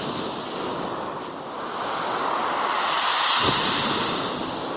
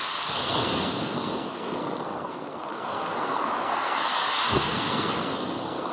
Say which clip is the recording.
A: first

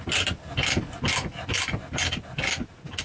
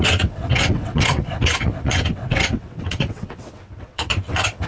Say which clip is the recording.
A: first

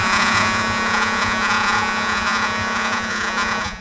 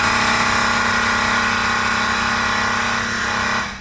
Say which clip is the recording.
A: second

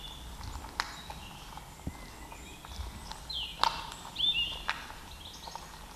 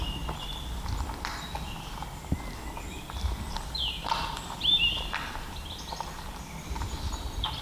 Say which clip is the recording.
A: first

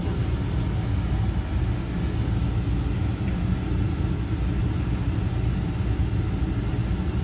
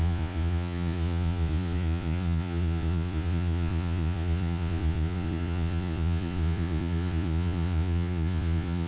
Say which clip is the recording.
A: first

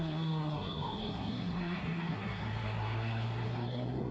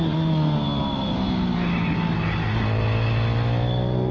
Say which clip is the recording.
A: second